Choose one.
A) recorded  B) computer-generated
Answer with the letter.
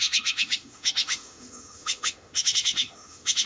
B